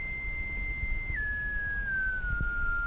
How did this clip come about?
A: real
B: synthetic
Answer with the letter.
A